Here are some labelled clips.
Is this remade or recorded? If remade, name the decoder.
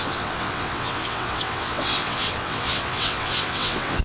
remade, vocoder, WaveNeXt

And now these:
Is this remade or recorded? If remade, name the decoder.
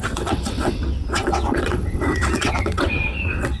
remade, vocoder, WaveNeXt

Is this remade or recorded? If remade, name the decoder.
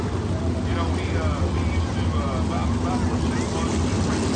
recorded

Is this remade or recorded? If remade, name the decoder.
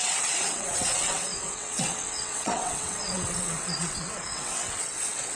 remade, vocoder, WaveNeXt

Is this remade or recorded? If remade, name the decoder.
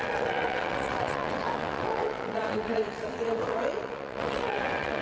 remade, vocoder, WaveNeXt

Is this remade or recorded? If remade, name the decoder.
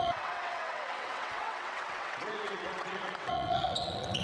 remade, vocoder, WaveNeXt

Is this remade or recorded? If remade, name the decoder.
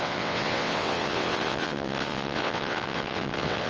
remade, vocoder, WaveNeXt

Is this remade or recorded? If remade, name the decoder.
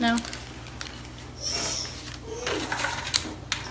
recorded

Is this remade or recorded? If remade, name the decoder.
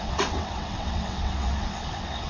remade, vocoder, WaveNeXt